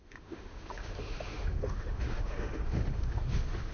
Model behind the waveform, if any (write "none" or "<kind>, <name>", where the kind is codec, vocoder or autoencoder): autoencoder, DAC-VAE